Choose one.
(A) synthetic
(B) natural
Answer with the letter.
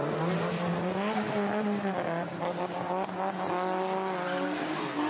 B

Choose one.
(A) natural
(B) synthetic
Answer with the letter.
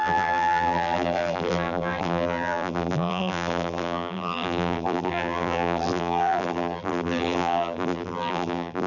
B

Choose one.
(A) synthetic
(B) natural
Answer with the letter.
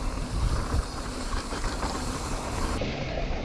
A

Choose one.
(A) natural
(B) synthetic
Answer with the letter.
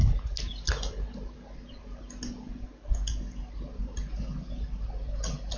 A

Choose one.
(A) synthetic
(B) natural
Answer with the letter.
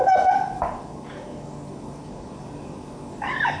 A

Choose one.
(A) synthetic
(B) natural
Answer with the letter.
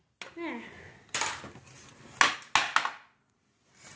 B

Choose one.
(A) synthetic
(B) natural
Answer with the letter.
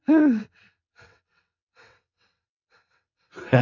A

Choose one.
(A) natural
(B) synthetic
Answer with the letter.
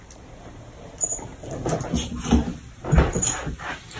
A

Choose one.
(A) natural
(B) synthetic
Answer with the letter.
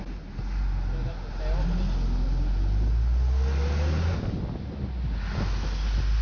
A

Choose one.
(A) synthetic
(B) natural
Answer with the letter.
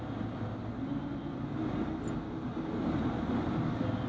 B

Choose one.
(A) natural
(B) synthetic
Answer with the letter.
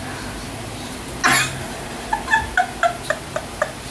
A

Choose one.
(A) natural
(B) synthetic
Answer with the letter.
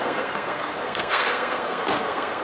B